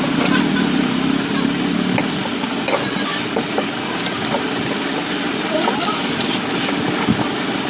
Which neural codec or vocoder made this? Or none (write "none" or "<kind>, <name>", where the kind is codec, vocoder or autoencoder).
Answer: none